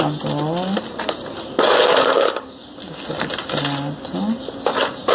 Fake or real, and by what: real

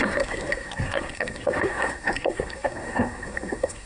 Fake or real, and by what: fake, codec, SNAC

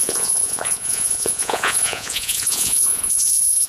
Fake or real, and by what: fake, vocoder, Vocos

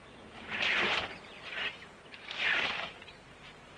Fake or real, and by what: fake, vocoder, BigVGAN v2